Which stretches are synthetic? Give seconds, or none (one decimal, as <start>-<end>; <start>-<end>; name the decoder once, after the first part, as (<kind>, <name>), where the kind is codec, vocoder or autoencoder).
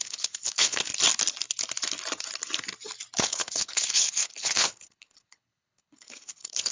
0.0-0.9 (codec, HILCodec); 3.2-6.7